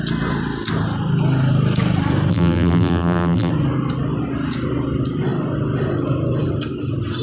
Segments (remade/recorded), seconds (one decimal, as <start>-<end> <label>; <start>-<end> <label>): 0.0-2.3 recorded; 2.3-3.5 remade; 3.5-7.2 recorded